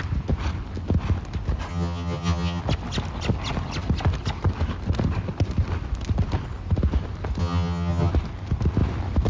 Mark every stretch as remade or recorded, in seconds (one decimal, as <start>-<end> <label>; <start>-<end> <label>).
0.0-1.7 recorded; 1.7-2.6 remade; 2.6-7.4 recorded; 7.4-8.1 remade; 8.1-9.3 recorded